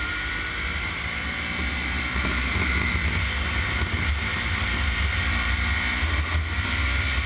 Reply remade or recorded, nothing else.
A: recorded